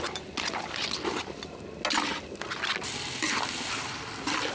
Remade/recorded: recorded